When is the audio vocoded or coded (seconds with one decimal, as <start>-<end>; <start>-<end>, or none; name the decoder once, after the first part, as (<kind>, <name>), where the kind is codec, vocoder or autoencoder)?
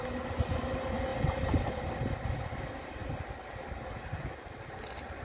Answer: none